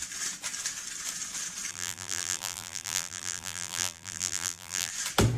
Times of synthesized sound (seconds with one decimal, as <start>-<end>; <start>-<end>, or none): 1.7-4.9